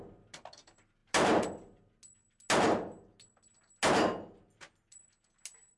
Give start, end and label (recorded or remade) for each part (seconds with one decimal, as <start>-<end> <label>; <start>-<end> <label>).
0.0-5.8 recorded